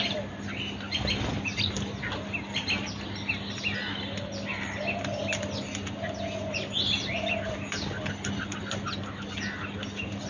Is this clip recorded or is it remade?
recorded